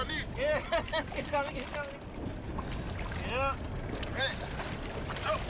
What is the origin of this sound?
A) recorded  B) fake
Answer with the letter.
A